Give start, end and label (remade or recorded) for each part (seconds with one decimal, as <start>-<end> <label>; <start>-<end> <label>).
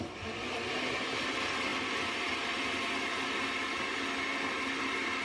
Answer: 0.0-5.2 recorded